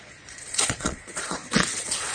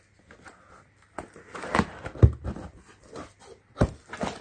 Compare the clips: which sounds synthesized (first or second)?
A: first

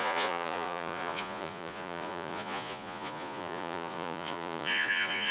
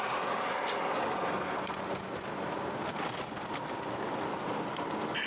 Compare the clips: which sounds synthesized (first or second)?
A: first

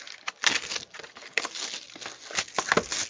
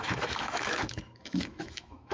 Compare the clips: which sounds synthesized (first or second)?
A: second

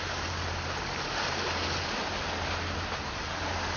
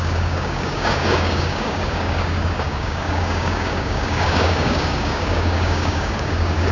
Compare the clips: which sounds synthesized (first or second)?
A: second